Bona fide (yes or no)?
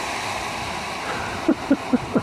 yes